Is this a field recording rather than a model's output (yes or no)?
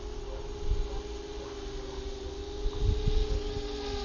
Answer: yes